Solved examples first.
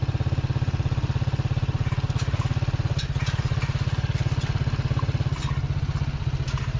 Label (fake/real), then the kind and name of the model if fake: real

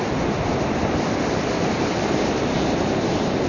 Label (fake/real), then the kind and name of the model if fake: real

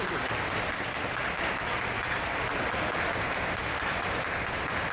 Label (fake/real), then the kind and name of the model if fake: real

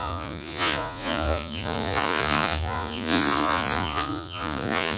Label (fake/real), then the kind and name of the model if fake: fake, vocoder, Vocos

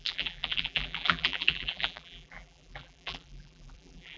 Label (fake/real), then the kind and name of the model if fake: fake, vocoder, BigVGAN v2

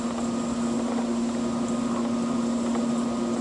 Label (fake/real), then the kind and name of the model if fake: real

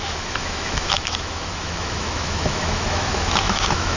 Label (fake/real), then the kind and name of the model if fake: fake, autoencoder, DAC-VAE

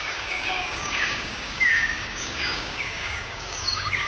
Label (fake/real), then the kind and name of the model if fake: fake, codec, DAC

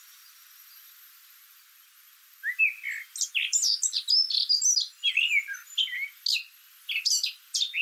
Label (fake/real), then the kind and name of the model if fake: real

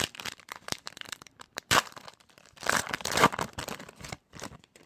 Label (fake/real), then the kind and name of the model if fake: fake, vocoder, BigVGAN v2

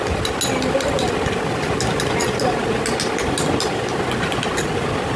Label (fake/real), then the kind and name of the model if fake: real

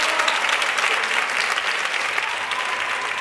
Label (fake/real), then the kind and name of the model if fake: real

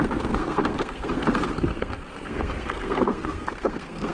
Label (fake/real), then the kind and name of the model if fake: fake, codec, SNAC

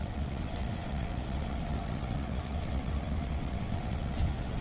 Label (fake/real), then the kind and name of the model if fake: fake, vocoder, WaveNeXt